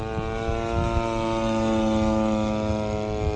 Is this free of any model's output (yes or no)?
yes